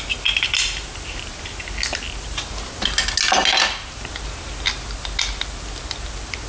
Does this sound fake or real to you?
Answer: real